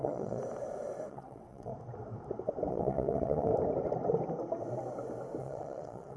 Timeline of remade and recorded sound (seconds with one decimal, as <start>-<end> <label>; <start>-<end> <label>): 0.0-0.4 remade; 0.4-1.1 recorded; 1.1-1.7 remade; 1.7-2.7 recorded; 2.7-3.5 remade; 3.5-5.4 recorded; 5.4-6.2 remade